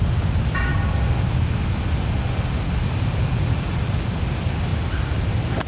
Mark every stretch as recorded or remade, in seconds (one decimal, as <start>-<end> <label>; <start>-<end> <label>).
0.0-5.7 recorded